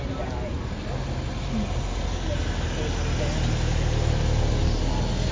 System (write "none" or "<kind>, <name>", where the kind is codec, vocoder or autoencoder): none